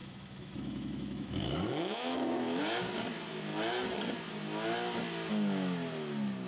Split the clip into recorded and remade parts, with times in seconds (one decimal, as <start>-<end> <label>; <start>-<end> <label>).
0.0-2.6 remade; 2.6-6.5 recorded